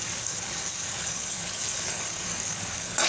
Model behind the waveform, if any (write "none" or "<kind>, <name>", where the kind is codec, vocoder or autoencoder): codec, DAC